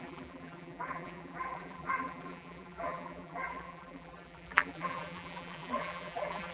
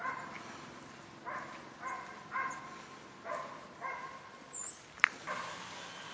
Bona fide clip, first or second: second